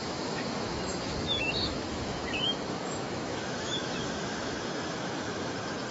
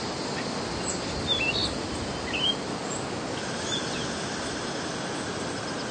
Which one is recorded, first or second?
second